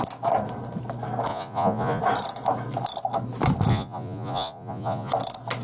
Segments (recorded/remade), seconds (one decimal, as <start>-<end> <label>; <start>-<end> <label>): 0.0-1.3 recorded; 1.3-2.0 remade; 2.0-3.7 recorded; 3.7-5.1 remade; 5.1-5.6 recorded